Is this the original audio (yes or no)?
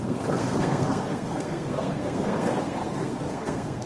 no